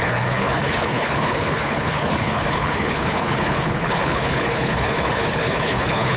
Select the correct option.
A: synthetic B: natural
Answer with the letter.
A